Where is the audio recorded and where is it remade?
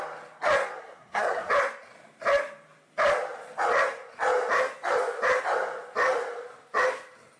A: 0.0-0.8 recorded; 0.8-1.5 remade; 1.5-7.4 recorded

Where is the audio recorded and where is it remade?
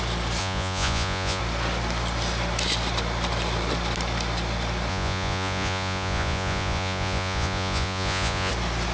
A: 0.0-0.4 recorded; 0.4-1.4 remade; 1.4-4.9 recorded; 4.9-8.5 remade; 8.5-8.9 recorded